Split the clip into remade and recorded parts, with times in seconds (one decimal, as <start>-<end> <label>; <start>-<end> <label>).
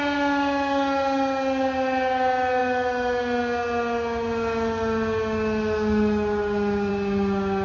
0.0-7.6 recorded